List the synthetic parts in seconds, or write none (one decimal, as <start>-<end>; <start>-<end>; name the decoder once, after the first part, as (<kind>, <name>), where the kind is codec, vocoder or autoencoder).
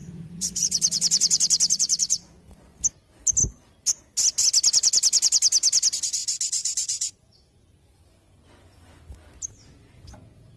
0.0-2.8 (vocoder, Vocos); 6.2-9.0